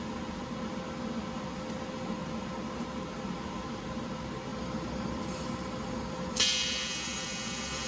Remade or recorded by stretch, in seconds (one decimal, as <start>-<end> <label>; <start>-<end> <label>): 0.0-4.5 recorded; 4.5-7.9 remade